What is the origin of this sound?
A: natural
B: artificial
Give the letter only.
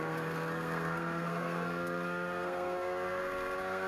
B